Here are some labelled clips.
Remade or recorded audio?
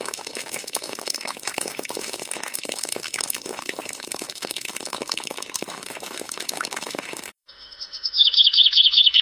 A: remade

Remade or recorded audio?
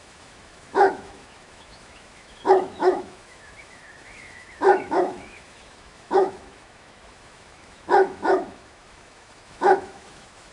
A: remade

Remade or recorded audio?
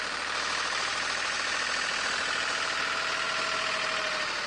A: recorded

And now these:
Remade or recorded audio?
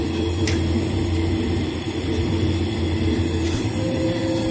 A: remade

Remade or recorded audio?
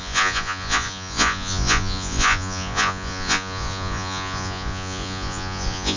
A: remade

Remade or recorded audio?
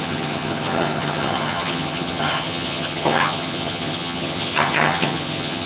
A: remade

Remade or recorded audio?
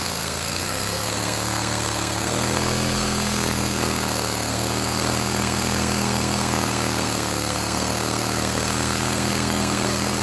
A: remade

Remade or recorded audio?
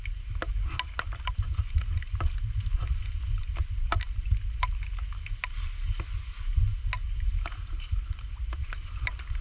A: recorded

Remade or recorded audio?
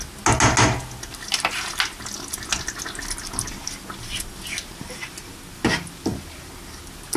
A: recorded